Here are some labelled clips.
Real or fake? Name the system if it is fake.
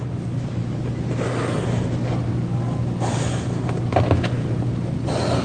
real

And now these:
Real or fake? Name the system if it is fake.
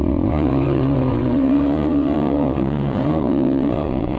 fake, vocoder, WaveNeXt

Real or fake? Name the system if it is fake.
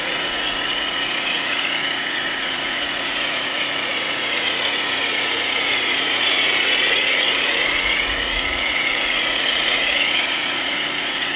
fake, vocoder, Vocos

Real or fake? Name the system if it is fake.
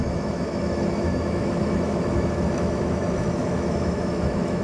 fake, autoencoder, DAC-VAE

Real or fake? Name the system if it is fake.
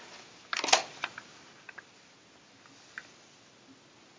real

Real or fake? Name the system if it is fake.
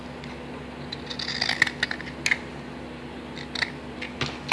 real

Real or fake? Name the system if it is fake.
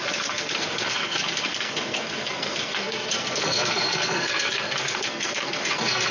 fake, codec, SNAC